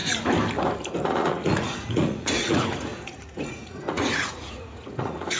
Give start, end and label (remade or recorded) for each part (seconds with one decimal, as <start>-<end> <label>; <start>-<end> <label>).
0.0-1.0 recorded; 1.0-5.4 remade